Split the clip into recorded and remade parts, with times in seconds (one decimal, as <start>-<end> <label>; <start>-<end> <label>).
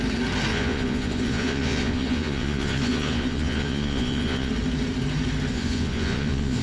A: 0.0-0.5 recorded; 0.5-4.5 remade; 4.5-5.5 recorded; 5.5-6.6 remade